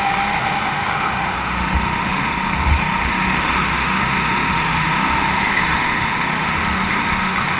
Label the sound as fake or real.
fake